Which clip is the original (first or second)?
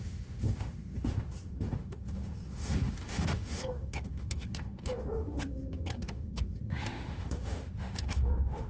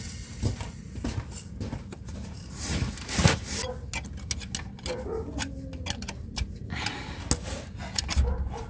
second